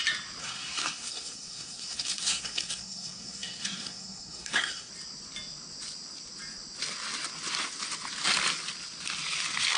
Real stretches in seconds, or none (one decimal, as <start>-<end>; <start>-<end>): 0.0-0.4; 4.9-9.8